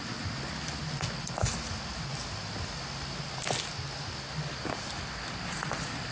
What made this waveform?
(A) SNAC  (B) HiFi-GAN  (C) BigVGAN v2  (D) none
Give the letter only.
D